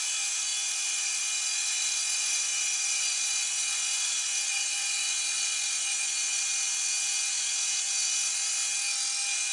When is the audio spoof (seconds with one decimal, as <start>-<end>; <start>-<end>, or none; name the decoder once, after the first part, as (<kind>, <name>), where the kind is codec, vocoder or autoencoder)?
1.6-6.4 (vocoder, Vocos)